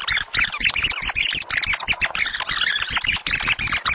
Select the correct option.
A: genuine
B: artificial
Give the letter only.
A